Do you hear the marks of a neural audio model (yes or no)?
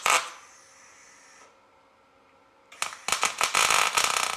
no